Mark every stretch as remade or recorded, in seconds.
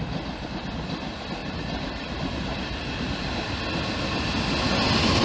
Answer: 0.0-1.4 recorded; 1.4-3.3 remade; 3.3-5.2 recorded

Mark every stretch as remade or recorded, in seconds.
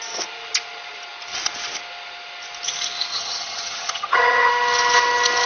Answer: 0.0-3.1 recorded; 3.1-4.5 remade; 4.5-5.5 recorded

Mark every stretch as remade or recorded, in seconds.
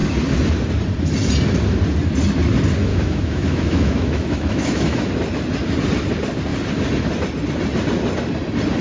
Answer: 0.0-2.9 recorded; 2.9-5.1 remade; 5.1-8.8 recorded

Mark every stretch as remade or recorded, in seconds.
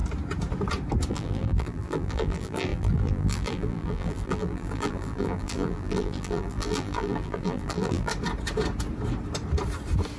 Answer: 0.0-1.1 recorded; 1.1-8.1 remade; 8.1-10.2 recorded